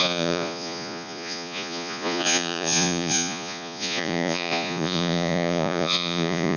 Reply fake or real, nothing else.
fake